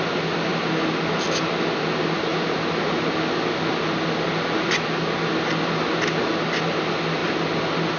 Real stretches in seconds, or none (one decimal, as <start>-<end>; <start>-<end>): 0.0-8.0